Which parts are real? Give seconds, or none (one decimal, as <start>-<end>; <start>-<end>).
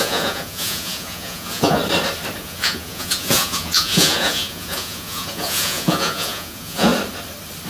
1.8-2.4; 6.9-7.7